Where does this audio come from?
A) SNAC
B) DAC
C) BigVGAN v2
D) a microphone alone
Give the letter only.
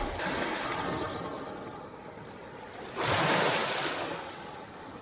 D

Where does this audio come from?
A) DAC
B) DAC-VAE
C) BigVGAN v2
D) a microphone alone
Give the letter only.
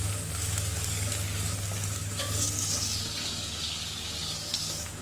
A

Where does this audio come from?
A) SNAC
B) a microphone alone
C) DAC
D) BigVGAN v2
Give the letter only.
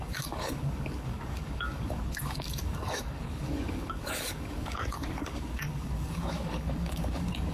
C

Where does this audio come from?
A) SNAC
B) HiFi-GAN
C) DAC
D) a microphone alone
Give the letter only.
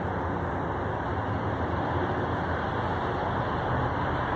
D